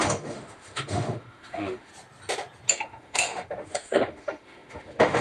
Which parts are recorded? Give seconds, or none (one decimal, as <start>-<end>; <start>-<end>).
1.9-2.7